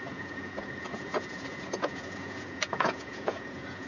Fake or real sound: fake